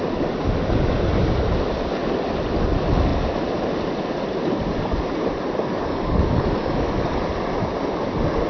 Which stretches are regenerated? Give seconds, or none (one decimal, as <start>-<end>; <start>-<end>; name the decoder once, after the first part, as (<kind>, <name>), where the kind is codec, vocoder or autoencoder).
5.7-7.2 (codec, DAC)